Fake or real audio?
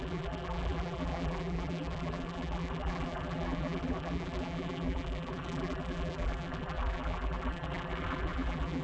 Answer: fake